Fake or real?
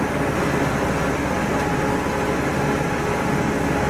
real